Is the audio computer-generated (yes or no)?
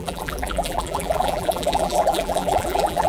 yes